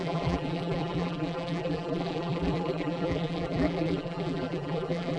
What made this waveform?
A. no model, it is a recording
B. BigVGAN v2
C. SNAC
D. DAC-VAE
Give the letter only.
B